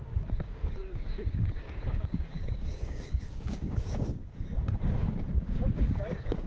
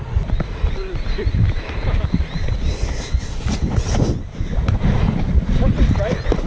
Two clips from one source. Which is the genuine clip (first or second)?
second